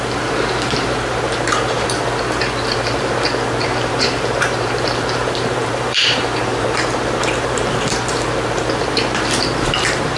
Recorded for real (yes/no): no